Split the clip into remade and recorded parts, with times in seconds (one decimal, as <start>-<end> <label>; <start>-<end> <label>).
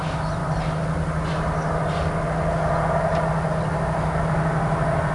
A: 0.0-5.1 recorded